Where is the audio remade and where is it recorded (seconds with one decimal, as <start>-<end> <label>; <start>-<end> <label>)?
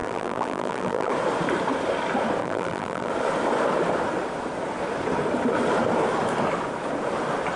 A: 0.0-1.1 remade; 1.1-2.4 recorded; 2.4-3.1 remade; 3.1-7.6 recorded